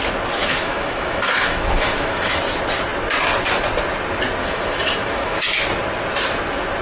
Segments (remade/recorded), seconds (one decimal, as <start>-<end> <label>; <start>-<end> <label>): 0.0-0.4 recorded; 0.4-2.4 remade; 2.4-4.4 recorded; 4.4-5.5 remade; 5.5-6.8 recorded